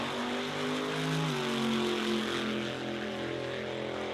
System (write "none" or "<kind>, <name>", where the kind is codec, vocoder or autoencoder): none